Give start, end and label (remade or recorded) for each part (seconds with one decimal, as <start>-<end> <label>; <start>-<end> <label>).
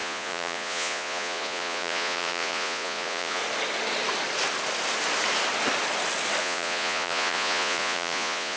0.0-3.4 remade; 3.4-6.4 recorded; 6.4-8.6 remade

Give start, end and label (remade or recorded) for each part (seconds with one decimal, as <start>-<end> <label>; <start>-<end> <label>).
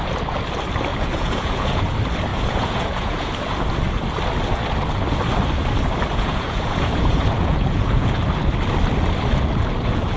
0.0-0.9 recorded; 0.9-1.9 remade; 1.9-2.3 recorded; 2.3-3.3 remade; 3.3-6.1 recorded; 6.1-8.2 remade; 8.2-10.2 recorded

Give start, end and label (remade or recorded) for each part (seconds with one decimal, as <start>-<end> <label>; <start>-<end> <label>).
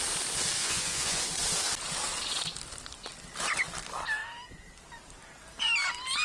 0.0-0.6 recorded; 0.6-1.2 remade; 1.2-6.2 recorded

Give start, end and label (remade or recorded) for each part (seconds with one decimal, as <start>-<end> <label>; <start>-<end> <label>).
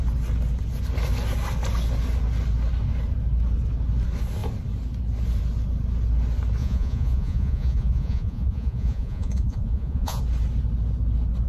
0.0-6.6 recorded; 6.6-10.2 remade; 10.2-11.5 recorded